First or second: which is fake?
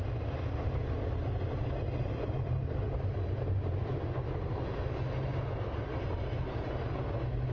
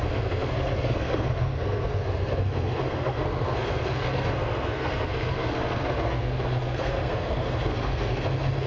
second